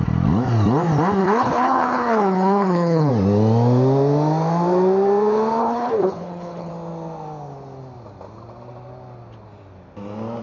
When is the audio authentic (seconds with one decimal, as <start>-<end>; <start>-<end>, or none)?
0.0-1.2; 3.1-5.6; 6.7-10.4